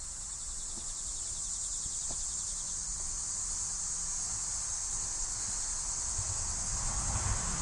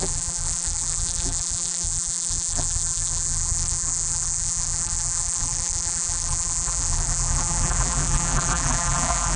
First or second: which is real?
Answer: first